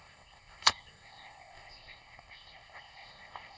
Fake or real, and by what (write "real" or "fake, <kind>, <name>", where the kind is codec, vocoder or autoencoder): fake, codec, ZipCodec